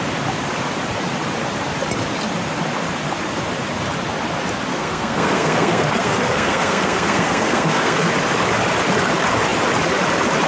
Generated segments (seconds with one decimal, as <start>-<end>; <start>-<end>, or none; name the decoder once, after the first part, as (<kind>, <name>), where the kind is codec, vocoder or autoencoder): 4.7-8.1 (codec, SNAC)